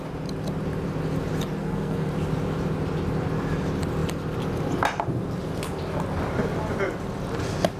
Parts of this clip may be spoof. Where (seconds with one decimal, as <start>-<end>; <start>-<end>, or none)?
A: 1.6-2.1